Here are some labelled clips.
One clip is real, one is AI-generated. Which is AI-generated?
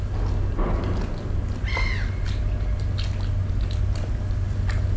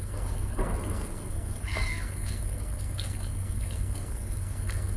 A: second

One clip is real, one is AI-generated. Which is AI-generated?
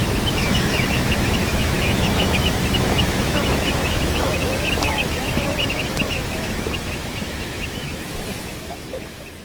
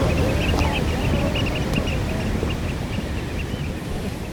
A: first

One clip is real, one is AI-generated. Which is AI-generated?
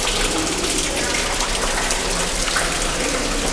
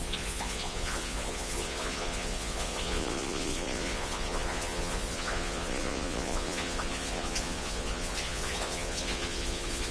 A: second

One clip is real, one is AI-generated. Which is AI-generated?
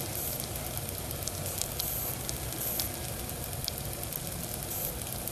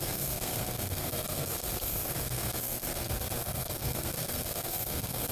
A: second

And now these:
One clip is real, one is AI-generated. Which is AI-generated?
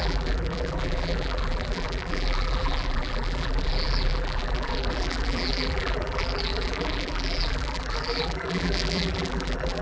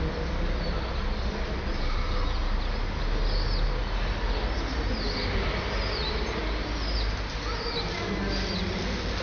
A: first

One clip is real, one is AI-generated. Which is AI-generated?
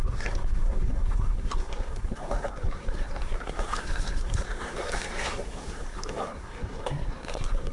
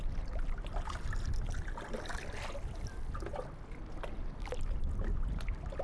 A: first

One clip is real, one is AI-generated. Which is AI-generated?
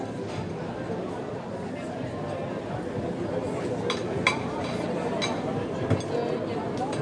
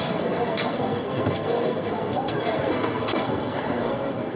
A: second